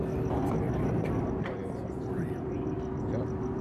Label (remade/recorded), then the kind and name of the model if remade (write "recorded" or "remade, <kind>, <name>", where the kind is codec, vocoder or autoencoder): recorded